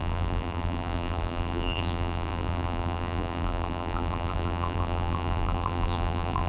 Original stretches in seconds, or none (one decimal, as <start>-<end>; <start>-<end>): none